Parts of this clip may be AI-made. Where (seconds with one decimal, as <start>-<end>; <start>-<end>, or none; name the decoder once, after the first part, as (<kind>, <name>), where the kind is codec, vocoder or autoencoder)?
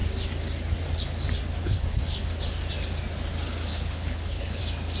1.6-2.4 (codec, HILCodec); 3.7-4.6